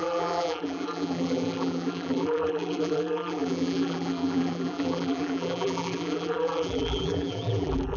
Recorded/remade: remade